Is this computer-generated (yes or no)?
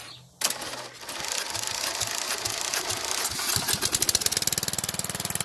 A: no